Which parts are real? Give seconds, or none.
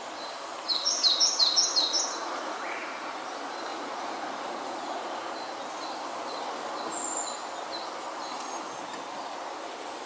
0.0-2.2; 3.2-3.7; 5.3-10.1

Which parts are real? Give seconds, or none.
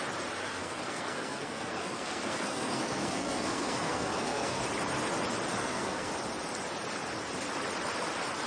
0.0-0.4; 4.6-5.6; 6.1-8.5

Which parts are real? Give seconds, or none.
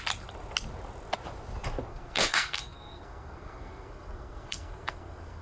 0.0-1.9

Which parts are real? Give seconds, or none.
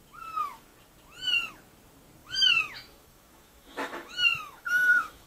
0.0-2.2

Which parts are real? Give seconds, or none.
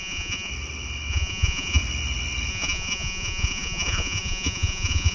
0.5-1.1; 1.8-2.5